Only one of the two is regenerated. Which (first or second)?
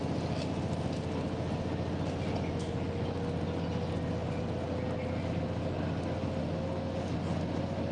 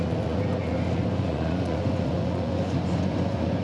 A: second